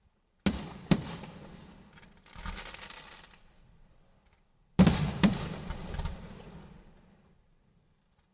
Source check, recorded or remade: remade